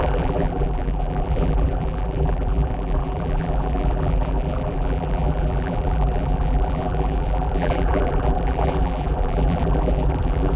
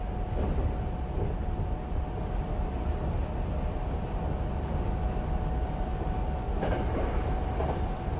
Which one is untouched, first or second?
second